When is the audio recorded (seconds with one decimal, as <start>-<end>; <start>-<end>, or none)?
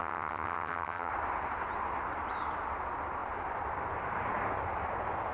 1.1-5.3